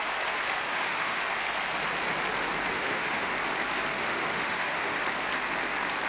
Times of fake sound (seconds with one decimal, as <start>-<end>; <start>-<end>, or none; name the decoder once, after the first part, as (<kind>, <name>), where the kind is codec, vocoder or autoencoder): 0.7-1.2 (autoencoder, DAC-VAE); 2.7-3.3; 4.0-5.0